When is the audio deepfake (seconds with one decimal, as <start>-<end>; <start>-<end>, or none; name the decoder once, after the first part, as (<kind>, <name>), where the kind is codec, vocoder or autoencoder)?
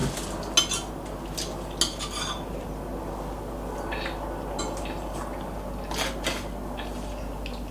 none